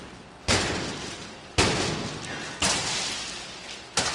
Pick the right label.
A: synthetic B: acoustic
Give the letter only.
B